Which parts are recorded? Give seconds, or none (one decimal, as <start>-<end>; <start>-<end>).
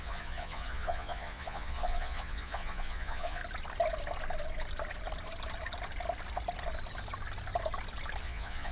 3.4-8.2